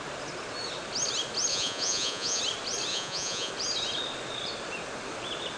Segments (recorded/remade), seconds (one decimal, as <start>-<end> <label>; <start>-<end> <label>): 0.0-1.5 recorded; 1.5-2.4 remade; 2.4-2.9 recorded; 2.9-3.5 remade; 3.5-5.6 recorded